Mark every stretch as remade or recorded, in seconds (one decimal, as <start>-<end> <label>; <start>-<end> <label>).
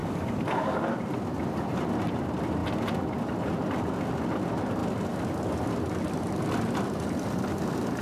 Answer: 0.0-0.9 remade; 0.9-8.0 recorded